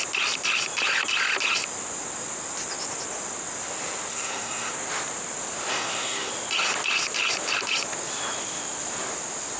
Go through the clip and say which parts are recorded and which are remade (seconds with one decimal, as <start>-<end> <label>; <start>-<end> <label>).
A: 0.0-4.1 recorded; 4.1-4.7 remade; 4.7-5.7 recorded; 5.7-6.3 remade; 6.3-9.6 recorded